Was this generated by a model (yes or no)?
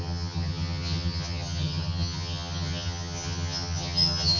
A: yes